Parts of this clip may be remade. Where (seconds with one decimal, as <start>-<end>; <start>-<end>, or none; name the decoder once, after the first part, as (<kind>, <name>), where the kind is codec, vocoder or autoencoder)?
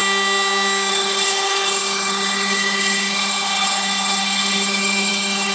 0.9-5.5 (codec, HILCodec)